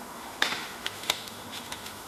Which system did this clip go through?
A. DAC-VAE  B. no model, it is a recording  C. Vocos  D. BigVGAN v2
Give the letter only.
A